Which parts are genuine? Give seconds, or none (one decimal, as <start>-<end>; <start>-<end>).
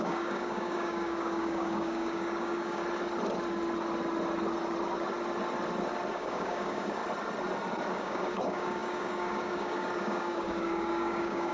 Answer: 2.8-6.1; 7.0-7.9